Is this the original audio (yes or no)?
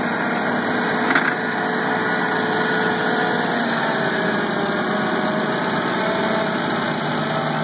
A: yes